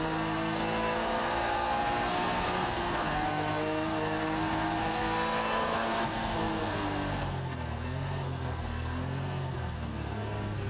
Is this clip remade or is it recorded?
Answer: remade